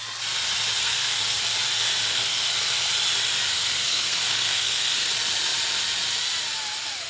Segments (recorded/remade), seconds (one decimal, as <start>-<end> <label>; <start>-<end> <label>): 0.0-0.8 recorded; 0.8-1.4 remade; 1.4-2.0 recorded; 2.0-2.5 remade; 2.5-3.5 recorded; 3.5-5.1 remade; 5.1-7.1 recorded